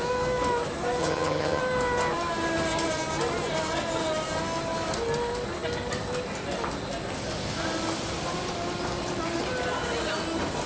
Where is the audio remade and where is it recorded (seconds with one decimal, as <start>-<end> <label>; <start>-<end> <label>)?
0.0-1.0 recorded; 1.0-1.6 remade; 1.6-10.7 recorded